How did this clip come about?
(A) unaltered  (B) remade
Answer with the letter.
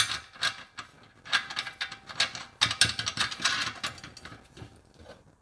A